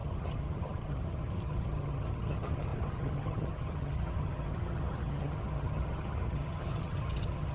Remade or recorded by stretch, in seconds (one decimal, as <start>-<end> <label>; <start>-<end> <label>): 0.0-7.5 remade

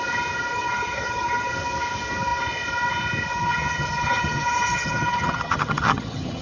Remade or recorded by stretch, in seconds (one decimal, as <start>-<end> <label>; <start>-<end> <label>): 0.0-0.5 recorded; 0.5-1.5 remade; 1.5-3.3 recorded; 3.3-6.4 remade

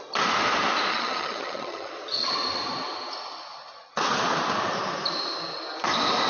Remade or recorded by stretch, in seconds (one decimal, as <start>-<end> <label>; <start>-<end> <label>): 0.0-0.9 recorded; 0.9-1.9 remade; 1.9-6.3 recorded

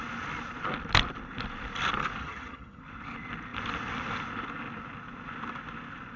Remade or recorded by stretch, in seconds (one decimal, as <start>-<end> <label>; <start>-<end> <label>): 0.0-2.2 recorded; 2.2-2.8 remade; 2.8-6.2 recorded

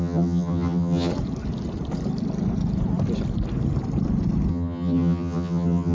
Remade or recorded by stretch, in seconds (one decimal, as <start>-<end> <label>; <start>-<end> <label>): 0.0-1.1 remade; 1.1-4.5 recorded; 4.5-5.9 remade

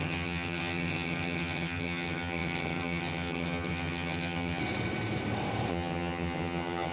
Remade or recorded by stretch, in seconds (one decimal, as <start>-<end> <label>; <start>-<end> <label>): 0.0-4.6 remade; 4.6-5.7 recorded; 5.7-6.9 remade

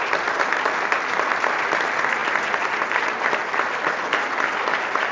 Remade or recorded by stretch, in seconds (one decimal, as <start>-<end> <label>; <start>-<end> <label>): 0.0-5.1 recorded